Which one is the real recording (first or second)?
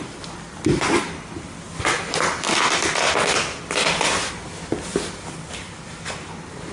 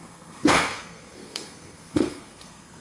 first